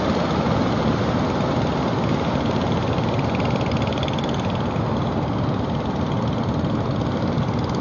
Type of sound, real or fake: real